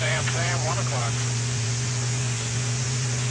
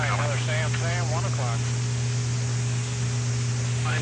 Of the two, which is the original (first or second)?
second